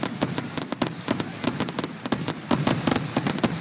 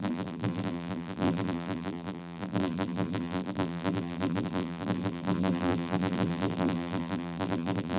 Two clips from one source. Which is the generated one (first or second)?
second